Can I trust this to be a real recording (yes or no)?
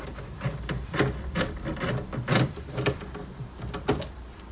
yes